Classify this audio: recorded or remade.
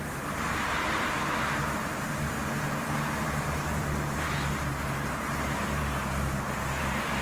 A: remade